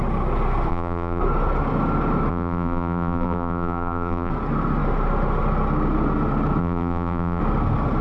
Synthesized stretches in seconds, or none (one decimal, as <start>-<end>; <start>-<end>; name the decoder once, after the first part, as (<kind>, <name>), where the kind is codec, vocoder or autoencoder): 0.7-1.2 (vocoder, BigVGAN v2); 2.3-4.3; 6.6-7.4